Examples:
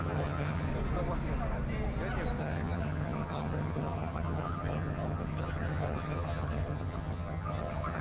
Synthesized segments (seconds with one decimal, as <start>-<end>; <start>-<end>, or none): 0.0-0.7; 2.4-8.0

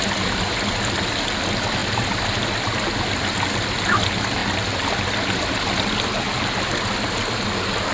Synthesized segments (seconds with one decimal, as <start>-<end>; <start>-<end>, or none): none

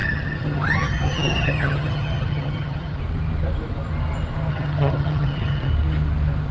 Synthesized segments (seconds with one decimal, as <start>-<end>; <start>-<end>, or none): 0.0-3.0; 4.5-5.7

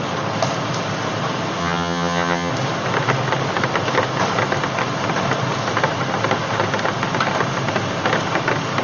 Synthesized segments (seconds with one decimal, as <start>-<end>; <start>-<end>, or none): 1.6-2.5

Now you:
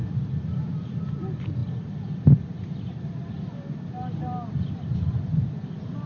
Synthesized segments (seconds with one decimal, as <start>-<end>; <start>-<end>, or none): none

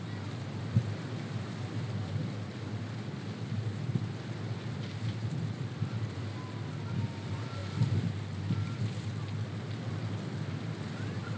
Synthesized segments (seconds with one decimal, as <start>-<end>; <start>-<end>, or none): none